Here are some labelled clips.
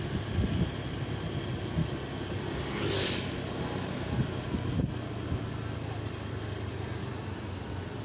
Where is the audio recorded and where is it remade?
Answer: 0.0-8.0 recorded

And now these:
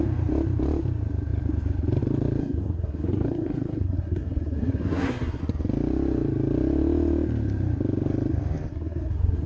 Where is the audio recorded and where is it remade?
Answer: 0.0-2.4 recorded; 2.4-5.4 remade; 5.4-8.7 recorded; 8.7-9.5 remade

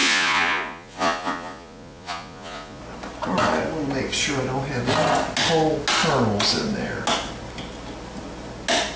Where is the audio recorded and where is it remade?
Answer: 0.0-2.8 remade; 2.8-9.0 recorded

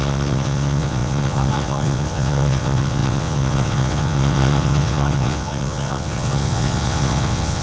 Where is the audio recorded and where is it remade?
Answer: 0.0-7.6 remade

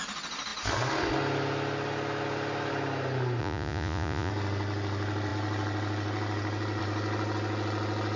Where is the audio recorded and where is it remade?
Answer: 0.0-3.4 recorded; 3.4-4.3 remade; 4.3-8.2 recorded

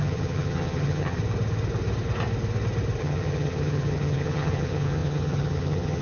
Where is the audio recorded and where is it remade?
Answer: 0.0-1.2 remade; 1.2-3.0 recorded; 3.0-6.0 remade